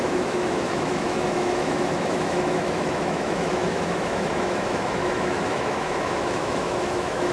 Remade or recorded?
remade